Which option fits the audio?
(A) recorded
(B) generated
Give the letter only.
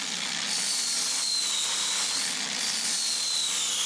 A